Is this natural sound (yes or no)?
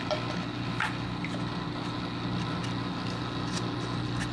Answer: yes